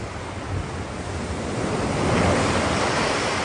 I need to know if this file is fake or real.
real